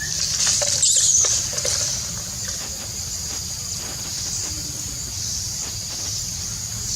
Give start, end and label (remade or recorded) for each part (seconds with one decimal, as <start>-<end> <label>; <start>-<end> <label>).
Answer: 0.0-7.0 recorded